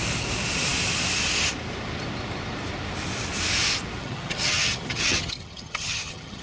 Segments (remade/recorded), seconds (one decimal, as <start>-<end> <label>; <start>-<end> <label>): 0.0-4.0 recorded; 4.0-6.4 remade